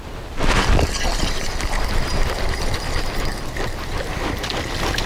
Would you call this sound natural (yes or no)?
yes